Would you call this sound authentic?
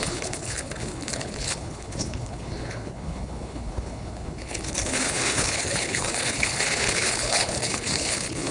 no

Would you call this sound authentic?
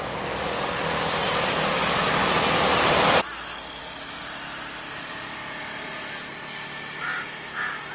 yes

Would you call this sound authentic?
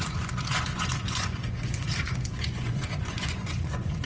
no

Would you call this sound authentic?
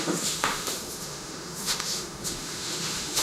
no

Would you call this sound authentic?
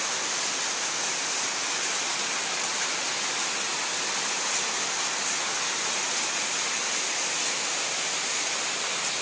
yes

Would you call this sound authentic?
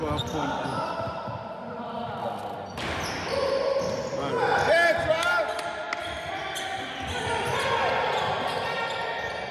yes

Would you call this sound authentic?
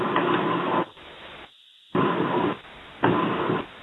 yes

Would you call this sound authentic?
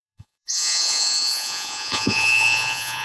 no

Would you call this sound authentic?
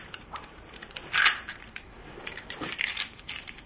no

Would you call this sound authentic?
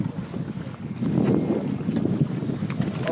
yes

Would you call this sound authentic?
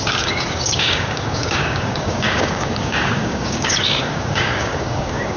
no